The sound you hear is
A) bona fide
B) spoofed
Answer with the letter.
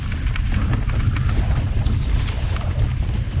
A